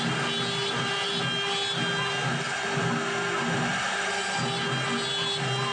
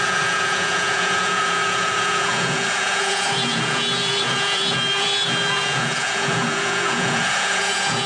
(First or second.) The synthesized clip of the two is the second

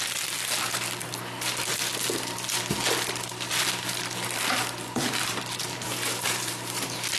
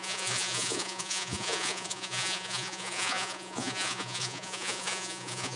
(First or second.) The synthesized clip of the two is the second